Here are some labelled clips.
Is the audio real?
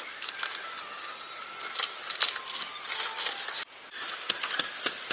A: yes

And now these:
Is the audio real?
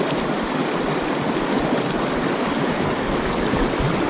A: no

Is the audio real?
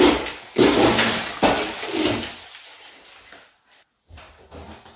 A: yes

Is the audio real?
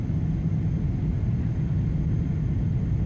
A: yes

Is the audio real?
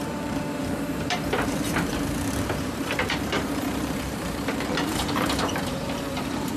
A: no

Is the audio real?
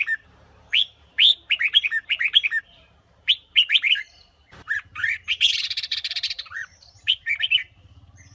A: no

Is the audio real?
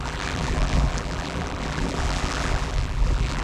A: no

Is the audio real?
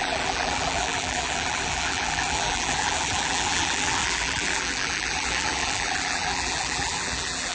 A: no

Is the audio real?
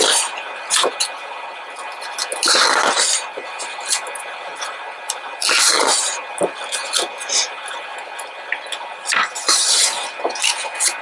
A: yes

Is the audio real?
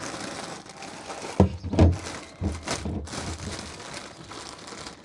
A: yes